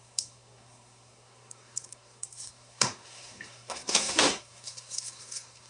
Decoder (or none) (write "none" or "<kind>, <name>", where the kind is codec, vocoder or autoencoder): codec, SNAC